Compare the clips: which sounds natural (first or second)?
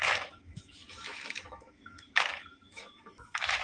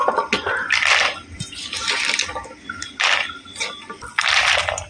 second